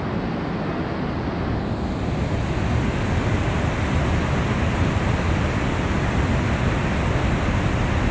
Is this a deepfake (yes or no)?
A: no